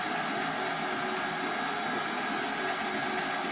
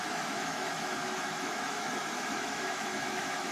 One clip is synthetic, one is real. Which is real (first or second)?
first